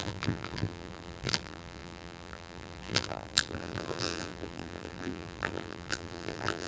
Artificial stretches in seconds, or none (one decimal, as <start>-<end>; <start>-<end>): 0.0-6.7